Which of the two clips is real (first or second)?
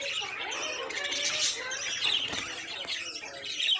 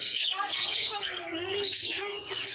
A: first